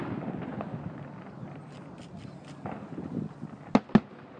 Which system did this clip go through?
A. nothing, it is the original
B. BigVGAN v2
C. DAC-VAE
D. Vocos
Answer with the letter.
A